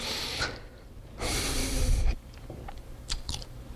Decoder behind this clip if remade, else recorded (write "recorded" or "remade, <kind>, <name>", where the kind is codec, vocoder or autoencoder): remade, vocoder, BigVGAN v2